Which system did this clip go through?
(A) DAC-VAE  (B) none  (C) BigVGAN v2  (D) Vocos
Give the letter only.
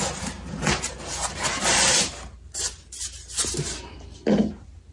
B